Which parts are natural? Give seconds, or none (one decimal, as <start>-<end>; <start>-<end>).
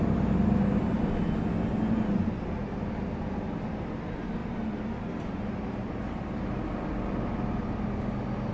0.0-8.5